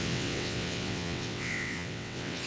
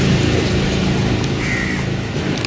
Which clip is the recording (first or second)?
second